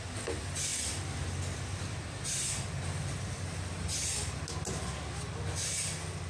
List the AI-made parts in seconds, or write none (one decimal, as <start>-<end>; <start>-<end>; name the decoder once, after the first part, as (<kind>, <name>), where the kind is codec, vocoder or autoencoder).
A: 0.7-2.3 (vocoder, BigVGAN v2)